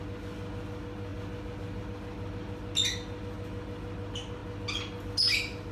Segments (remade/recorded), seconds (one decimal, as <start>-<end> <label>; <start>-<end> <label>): 0.0-5.7 recorded